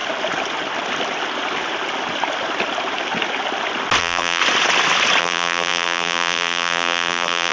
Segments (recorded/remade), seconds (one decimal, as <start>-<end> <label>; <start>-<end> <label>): 0.0-4.0 recorded; 4.0-4.4 remade; 4.4-5.2 recorded; 5.2-7.5 remade